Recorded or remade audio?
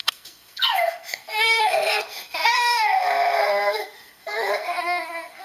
remade